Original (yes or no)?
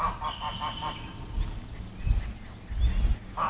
yes